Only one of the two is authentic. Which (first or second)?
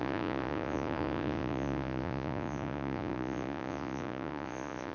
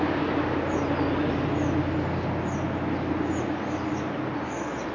second